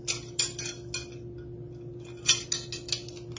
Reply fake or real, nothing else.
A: real